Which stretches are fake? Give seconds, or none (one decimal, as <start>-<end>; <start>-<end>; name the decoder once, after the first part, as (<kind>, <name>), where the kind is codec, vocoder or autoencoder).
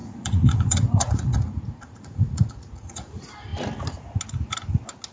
0.0-3.1 (vocoder, Vocos)